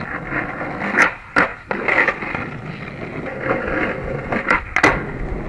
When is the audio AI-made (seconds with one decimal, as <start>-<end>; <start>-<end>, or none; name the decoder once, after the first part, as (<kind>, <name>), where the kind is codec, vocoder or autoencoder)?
none